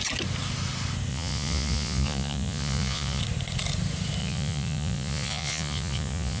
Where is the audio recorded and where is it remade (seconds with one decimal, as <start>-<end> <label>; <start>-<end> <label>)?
0.0-1.1 recorded; 1.1-3.2 remade; 3.2-4.2 recorded; 4.2-6.4 remade